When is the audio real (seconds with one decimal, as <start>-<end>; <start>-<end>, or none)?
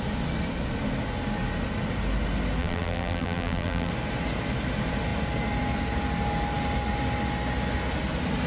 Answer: 0.0-2.6; 3.9-8.5